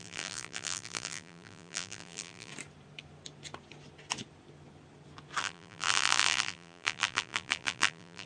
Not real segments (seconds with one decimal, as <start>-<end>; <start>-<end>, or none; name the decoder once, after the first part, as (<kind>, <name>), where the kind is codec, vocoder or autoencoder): 0.0-2.5 (vocoder, BigVGAN v2); 5.4-8.3

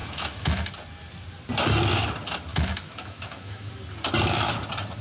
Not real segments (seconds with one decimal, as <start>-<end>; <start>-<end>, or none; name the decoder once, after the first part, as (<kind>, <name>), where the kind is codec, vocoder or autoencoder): 0.0-0.7 (autoencoder, DAC-VAE); 2.5-3.7